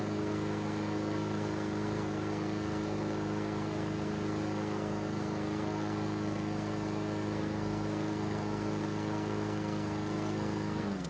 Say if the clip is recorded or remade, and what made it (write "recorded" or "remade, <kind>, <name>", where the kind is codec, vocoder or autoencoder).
remade, codec, SNAC